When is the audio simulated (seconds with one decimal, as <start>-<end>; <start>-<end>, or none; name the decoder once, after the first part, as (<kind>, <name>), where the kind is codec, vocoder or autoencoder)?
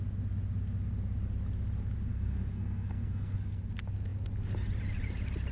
2.1-3.6 (codec, SNAC)